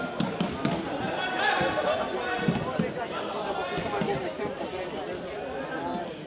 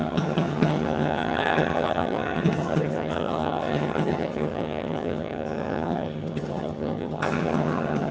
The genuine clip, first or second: first